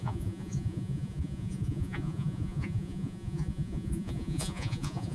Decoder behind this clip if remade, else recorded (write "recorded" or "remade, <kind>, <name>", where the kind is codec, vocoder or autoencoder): remade, vocoder, Vocos